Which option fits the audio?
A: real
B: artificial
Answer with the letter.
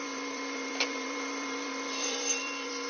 B